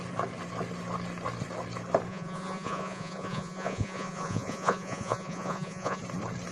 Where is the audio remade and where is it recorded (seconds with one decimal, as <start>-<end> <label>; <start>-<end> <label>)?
0.0-2.1 recorded; 2.1-6.0 remade; 6.0-6.5 recorded